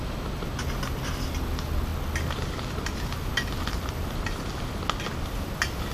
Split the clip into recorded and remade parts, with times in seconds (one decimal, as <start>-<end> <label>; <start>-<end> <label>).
0.0-5.9 recorded

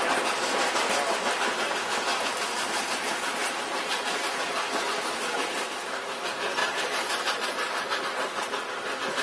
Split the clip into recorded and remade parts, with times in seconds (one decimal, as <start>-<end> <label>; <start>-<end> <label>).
0.0-3.4 recorded; 3.4-4.3 remade; 4.3-6.6 recorded; 6.6-8.0 remade; 8.0-9.2 recorded

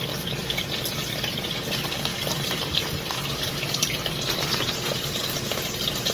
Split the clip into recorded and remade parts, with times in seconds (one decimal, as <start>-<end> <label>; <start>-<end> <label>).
0.0-0.4 recorded; 0.4-1.3 remade; 1.3-2.1 recorded; 2.1-4.5 remade; 4.5-6.1 recorded

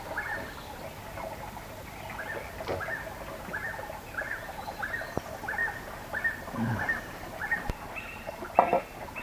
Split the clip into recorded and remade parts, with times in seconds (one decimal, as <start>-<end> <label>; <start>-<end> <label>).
0.0-9.2 recorded

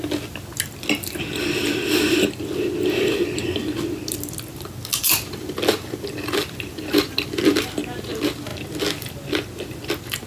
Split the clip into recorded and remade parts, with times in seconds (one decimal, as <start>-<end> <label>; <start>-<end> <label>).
0.0-4.9 recorded; 4.9-7.7 remade; 7.7-10.3 recorded

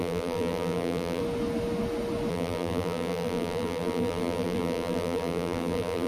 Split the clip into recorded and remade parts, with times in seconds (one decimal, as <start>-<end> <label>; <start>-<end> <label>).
0.0-1.2 remade; 1.2-2.3 recorded; 2.3-6.1 remade

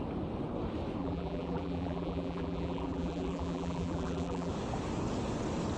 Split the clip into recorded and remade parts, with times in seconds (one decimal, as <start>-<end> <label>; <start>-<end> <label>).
0.0-1.0 recorded; 1.0-4.5 remade; 4.5-5.8 recorded